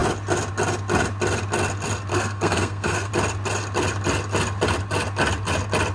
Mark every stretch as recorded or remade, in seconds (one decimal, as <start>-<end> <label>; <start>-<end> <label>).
0.0-2.1 recorded; 2.1-3.1 remade; 3.1-5.9 recorded